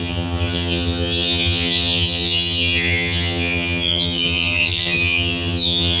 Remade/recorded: remade